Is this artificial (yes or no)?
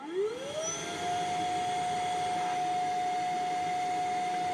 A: no